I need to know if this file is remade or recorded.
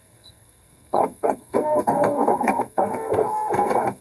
remade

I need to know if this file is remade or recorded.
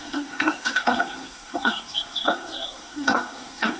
remade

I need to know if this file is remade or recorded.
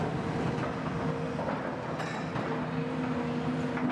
recorded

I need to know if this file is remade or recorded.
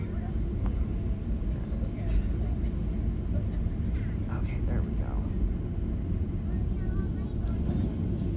recorded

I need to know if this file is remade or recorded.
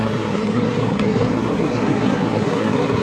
remade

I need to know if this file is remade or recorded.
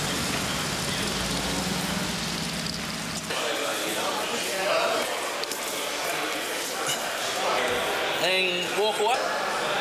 recorded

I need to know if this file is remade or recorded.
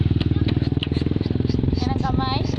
recorded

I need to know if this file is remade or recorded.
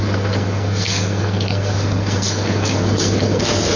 remade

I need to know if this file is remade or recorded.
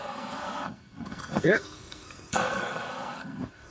remade